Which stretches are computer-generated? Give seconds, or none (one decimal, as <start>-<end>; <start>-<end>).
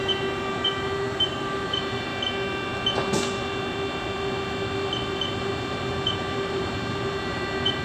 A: 0.0-2.1; 5.4-7.8